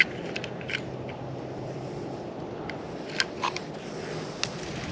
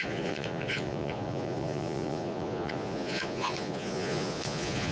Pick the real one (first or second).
first